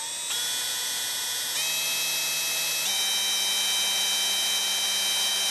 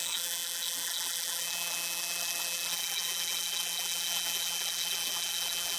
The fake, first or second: second